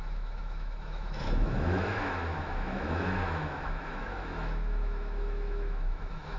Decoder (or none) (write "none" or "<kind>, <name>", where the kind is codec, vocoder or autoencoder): autoencoder, DAC-VAE